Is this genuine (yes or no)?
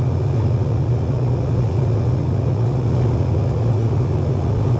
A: no